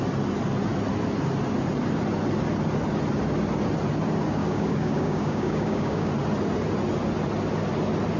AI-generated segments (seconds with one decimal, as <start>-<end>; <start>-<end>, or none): 4.4-6.1